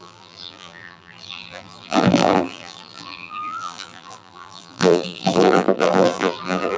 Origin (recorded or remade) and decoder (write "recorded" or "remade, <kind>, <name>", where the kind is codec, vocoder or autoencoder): remade, vocoder, BigVGAN v2